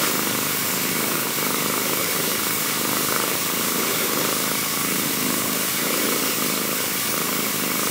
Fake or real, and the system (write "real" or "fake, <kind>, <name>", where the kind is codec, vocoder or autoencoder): fake, codec, DAC